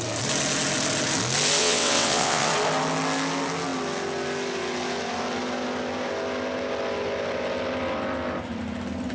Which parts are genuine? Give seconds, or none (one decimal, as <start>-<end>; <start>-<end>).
0.0-1.6; 2.5-9.1